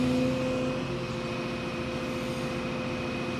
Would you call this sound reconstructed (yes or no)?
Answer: no